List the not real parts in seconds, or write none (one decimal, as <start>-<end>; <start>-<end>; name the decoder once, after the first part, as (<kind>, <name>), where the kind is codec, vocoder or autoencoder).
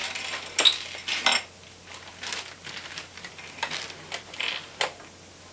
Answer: none